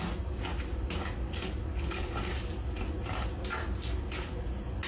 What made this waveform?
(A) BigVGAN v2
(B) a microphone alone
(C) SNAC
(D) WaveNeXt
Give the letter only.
B